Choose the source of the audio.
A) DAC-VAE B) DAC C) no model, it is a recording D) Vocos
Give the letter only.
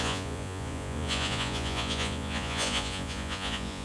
D